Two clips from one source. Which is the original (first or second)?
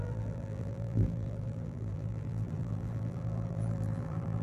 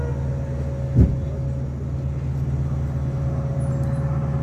second